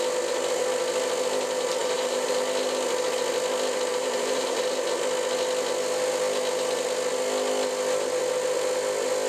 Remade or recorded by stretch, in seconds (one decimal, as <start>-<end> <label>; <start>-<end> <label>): 0.0-1.8 recorded; 1.8-2.4 remade; 2.4-3.9 recorded; 3.9-4.6 remade; 4.6-9.3 recorded